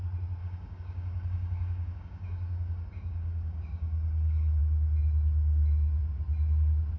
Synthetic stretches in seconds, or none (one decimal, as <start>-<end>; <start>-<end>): 0.4-4.6